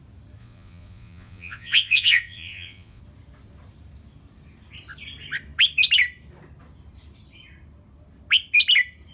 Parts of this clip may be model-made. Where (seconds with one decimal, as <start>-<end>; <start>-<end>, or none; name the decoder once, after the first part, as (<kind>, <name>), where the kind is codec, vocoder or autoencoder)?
0.4-3.0 (vocoder, Vocos)

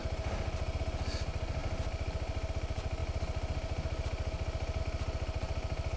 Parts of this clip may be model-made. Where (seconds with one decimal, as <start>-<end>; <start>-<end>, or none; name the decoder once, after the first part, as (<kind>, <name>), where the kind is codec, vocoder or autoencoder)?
none